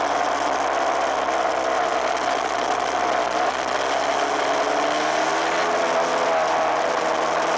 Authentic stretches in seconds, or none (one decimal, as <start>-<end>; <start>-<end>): 0.0-7.6